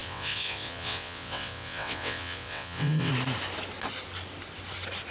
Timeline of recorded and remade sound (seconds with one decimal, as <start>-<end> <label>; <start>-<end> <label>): 0.0-3.1 remade; 3.1-5.1 recorded